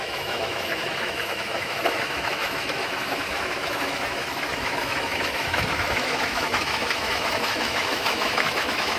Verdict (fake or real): fake